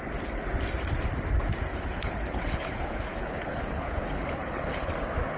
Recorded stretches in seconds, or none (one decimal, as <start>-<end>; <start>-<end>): 0.0-1.7; 4.9-5.4